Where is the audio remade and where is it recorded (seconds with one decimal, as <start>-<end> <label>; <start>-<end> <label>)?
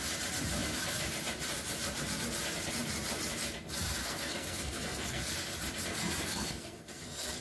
0.0-4.0 recorded; 4.0-5.3 remade; 5.3-5.9 recorded; 5.9-7.4 remade